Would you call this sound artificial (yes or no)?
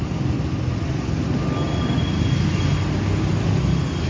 no